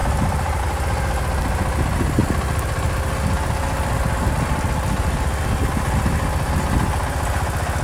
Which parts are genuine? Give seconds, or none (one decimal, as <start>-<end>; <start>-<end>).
0.6-7.8